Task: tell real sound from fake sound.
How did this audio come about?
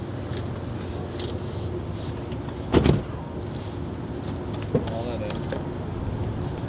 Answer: real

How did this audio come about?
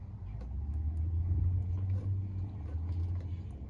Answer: real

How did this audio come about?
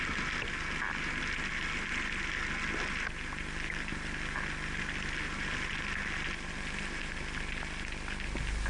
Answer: real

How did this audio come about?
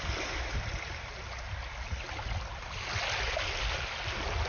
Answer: real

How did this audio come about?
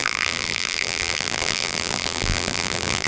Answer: fake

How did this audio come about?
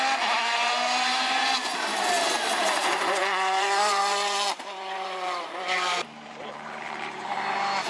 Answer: fake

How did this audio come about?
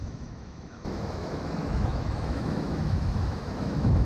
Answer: fake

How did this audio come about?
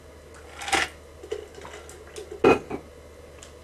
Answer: real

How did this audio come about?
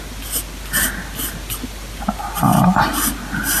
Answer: real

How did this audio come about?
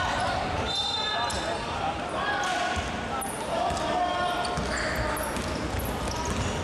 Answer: real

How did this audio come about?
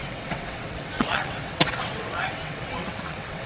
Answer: fake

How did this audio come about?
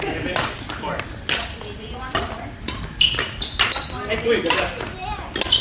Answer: real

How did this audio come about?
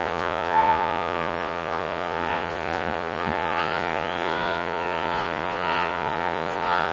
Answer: fake